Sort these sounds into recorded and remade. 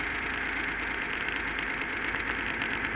recorded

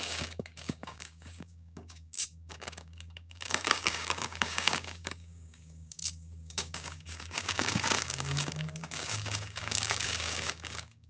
remade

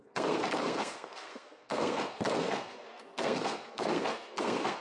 remade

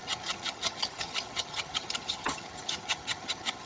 remade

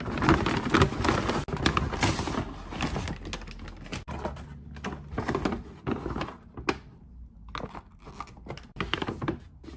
recorded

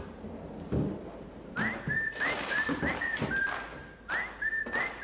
recorded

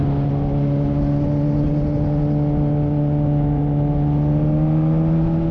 recorded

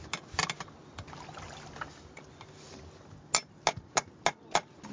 recorded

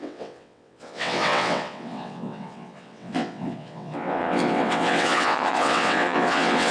remade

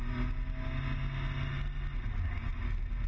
recorded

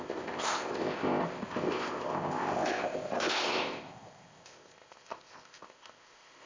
remade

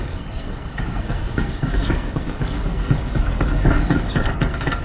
remade